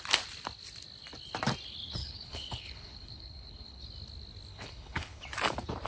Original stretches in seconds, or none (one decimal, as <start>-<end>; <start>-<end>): 0.0-2.0; 3.8-4.5; 5.2-5.9